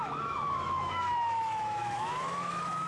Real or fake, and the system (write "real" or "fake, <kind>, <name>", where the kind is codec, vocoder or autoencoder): fake, autoencoder, DAC-VAE